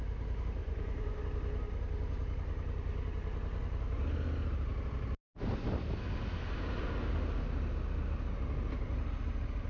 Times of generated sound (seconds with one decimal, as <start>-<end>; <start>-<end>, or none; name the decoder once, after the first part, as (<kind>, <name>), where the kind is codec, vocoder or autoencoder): 0.6-1.2 (vocoder, Vocos)